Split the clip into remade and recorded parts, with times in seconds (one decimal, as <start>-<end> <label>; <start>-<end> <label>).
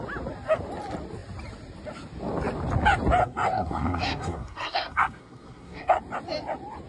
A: 0.0-3.2 recorded; 3.2-6.0 remade; 6.0-6.9 recorded